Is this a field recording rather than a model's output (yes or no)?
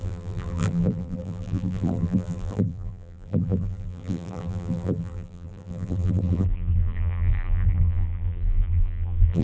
no